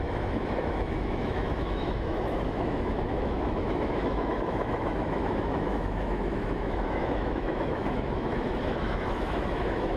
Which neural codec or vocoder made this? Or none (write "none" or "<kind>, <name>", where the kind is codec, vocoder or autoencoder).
autoencoder, DAC-VAE